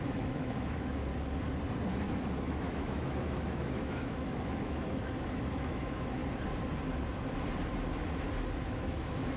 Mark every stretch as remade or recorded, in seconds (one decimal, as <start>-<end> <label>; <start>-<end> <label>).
0.0-1.1 remade; 1.1-2.5 recorded; 2.5-6.2 remade; 6.2-8.9 recorded; 8.9-9.4 remade